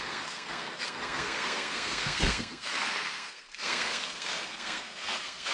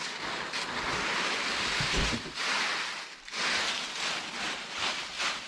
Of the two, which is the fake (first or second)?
first